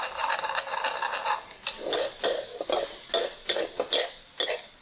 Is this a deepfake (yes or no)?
no